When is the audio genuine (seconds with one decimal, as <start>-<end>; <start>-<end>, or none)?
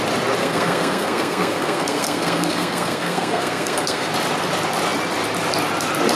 0.0-0.4; 4.1-6.2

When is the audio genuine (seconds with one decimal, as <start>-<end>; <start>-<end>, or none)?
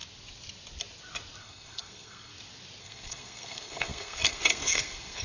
0.0-1.4; 2.3-2.8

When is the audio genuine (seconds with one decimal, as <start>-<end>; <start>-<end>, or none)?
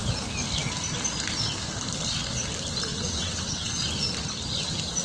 0.0-2.9; 3.7-5.0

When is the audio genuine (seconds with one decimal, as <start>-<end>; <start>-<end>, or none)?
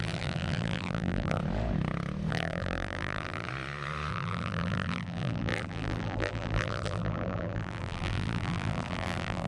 1.4-2.3; 3.5-4.1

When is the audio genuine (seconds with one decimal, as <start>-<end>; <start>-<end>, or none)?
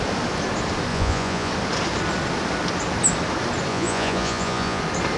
0.0-0.9; 1.5-3.7; 4.8-5.2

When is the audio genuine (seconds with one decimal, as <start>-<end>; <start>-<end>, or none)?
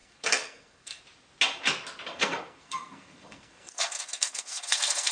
1.0-2.1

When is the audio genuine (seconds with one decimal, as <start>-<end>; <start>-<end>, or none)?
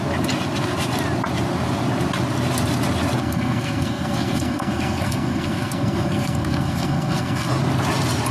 0.0-3.2; 7.5-8.3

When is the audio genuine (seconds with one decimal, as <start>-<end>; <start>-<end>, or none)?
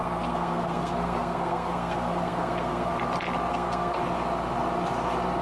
2.9-3.5; 4.0-5.4